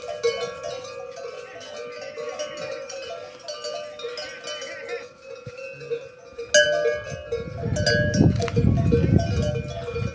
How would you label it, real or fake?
real